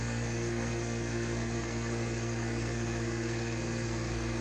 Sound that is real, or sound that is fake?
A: fake